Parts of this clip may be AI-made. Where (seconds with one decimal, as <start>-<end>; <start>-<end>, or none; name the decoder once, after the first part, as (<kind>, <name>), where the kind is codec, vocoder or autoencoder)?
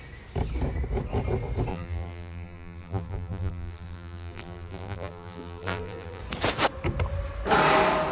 1.7-6.2 (vocoder, BigVGAN v2)